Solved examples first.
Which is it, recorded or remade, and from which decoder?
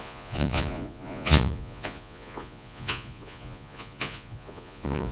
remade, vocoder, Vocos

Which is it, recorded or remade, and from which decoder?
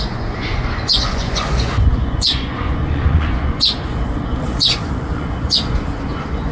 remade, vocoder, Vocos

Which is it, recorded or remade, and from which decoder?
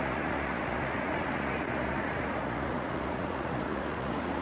remade, vocoder, Vocos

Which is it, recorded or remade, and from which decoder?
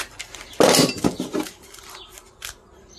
recorded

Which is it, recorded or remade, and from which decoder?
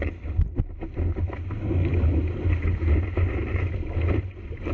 recorded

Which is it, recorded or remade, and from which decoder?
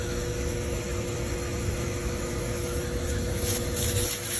remade, autoencoder, DAC-VAE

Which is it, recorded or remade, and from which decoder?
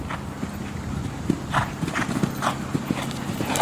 recorded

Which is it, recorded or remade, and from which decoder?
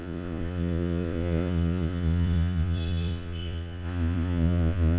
remade, vocoder, Vocos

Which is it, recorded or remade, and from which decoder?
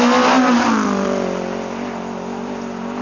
recorded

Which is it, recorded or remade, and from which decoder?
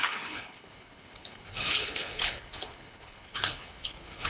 remade, codec, HILCodec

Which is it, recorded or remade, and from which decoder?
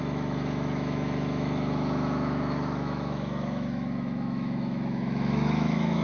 remade, autoencoder, DAC-VAE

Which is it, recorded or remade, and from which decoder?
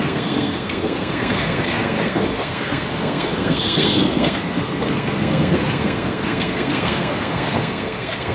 remade, codec, SNAC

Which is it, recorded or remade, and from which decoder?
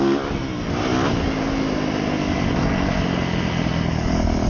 recorded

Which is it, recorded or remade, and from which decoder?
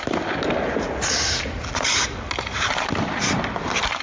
recorded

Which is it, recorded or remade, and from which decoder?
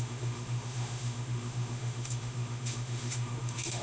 remade, autoencoder, DAC-VAE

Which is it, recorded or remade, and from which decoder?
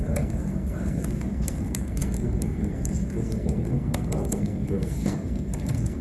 remade, codec, SNAC